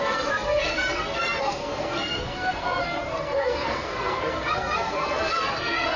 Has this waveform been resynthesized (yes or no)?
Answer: yes